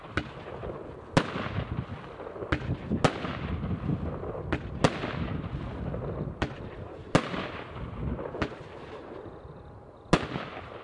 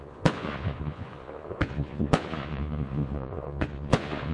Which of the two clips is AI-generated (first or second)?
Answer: second